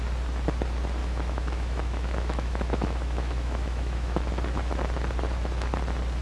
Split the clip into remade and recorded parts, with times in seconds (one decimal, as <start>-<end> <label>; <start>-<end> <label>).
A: 0.0-1.0 recorded; 1.0-4.3 remade; 4.3-6.2 recorded